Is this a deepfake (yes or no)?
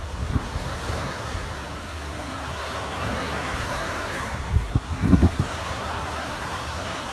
yes